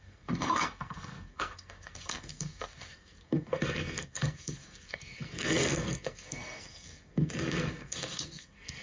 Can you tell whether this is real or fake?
fake